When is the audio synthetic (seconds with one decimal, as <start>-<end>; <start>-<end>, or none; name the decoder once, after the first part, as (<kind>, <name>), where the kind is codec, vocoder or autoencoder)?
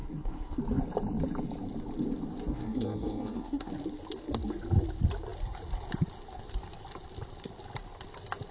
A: 0.0-0.6 (codec, SNAC); 2.5-3.7